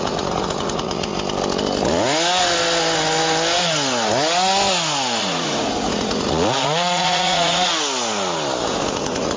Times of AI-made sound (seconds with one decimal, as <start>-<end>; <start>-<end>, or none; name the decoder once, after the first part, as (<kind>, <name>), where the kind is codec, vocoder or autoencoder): 0.0-1.1 (vocoder, Vocos); 5.2-7.7; 8.7-9.4